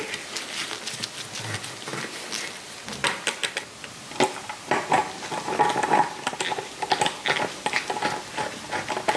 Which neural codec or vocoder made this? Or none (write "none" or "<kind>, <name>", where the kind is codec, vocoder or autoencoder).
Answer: none